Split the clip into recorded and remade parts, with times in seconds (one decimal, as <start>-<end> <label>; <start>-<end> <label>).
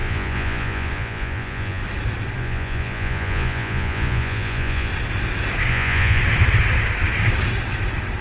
0.0-1.8 remade; 1.8-2.4 recorded; 2.4-4.9 remade; 4.9-5.7 recorded; 5.7-6.2 remade; 6.2-8.2 recorded